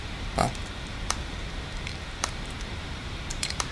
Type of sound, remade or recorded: remade